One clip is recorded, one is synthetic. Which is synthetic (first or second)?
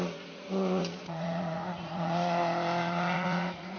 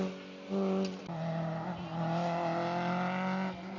first